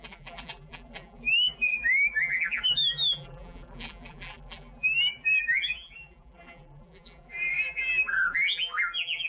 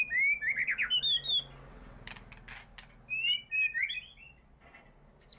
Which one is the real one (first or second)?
second